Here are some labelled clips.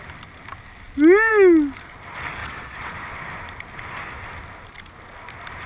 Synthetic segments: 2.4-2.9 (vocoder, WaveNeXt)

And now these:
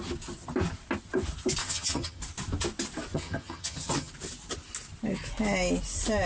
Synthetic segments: 1.6-2.2 (vocoder, HiFi-GAN); 3.1-4.1

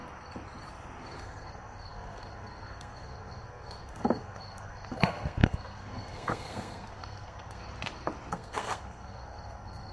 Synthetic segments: 1.2-7.6 (codec, SNAC); 8.3-9.9

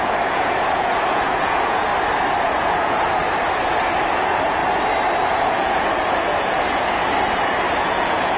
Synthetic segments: 0.0-1.9 (vocoder, Vocos); 2.4-3.2; 4.1-4.6; 5.2-7.0; 7.8-8.4